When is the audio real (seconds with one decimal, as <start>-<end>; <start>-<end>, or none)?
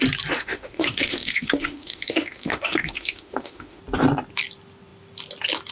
0.0-0.4; 3.8-5.7